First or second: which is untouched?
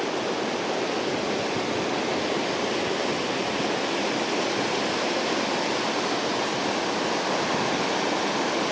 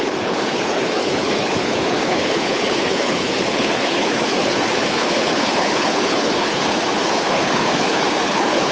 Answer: first